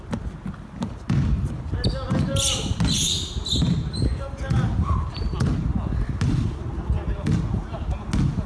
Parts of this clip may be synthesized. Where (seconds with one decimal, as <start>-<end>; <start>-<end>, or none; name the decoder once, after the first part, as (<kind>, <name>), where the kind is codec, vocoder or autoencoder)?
none